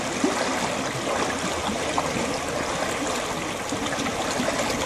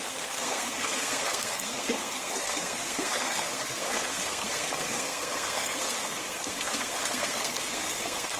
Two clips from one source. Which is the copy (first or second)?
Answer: second